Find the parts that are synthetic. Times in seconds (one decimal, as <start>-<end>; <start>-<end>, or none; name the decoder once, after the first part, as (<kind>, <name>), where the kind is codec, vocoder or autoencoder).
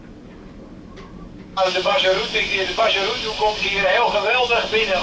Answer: 1.5-4.5 (codec, DAC)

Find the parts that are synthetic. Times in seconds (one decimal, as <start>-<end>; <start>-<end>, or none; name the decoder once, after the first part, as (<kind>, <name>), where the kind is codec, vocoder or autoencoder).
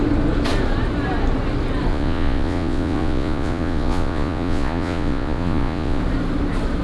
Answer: 1.9-6.0 (vocoder, Vocos)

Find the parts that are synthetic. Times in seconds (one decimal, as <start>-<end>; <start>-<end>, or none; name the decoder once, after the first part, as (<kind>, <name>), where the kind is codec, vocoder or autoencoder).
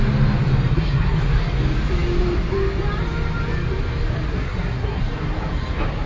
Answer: 0.7-1.2 (codec, SNAC); 4.3-5.0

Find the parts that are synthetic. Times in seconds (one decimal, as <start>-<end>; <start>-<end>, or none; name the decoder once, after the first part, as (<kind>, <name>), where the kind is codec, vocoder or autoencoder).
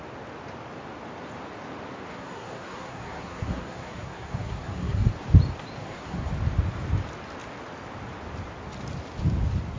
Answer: 2.1-5.1 (codec, SNAC); 5.8-6.3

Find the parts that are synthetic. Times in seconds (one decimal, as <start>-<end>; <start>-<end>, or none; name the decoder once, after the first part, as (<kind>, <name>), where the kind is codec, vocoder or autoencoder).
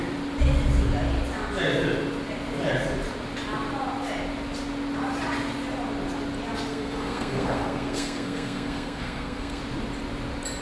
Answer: 6.7-9.6 (codec, SNAC)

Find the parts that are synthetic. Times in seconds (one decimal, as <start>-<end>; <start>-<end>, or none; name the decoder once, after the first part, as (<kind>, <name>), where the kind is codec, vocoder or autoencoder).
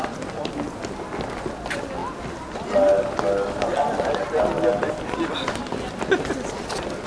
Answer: none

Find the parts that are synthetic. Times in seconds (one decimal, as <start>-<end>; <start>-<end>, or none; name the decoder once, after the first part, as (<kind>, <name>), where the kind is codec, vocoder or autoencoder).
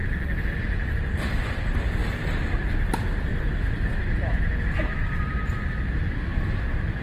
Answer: none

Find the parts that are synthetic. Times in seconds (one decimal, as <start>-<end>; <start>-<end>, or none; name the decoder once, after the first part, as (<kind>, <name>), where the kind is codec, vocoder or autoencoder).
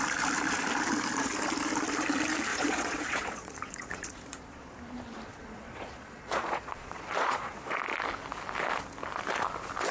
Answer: 2.5-4.7 (vocoder, Vocos); 5.3-7.8